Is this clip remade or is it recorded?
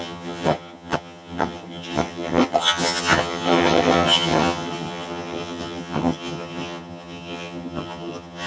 remade